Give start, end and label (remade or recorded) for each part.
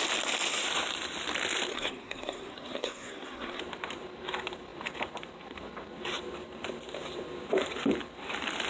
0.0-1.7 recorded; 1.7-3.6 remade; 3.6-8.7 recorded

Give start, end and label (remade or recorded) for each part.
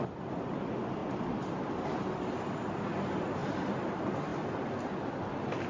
0.0-5.7 recorded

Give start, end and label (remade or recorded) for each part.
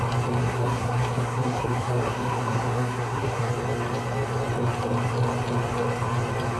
0.0-0.4 recorded; 0.4-3.5 remade; 3.5-6.6 recorded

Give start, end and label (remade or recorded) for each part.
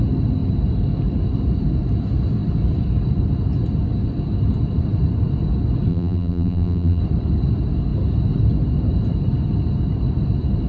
0.0-5.9 recorded; 5.9-7.0 remade; 7.0-10.7 recorded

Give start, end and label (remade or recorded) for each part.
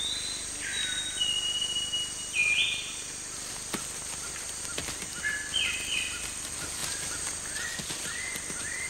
0.0-8.9 recorded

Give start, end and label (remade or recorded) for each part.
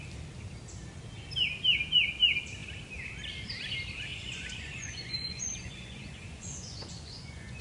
0.0-4.1 recorded; 4.1-7.6 remade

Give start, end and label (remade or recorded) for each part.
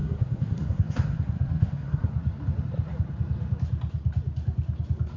0.0-2.1 remade; 2.1-5.2 recorded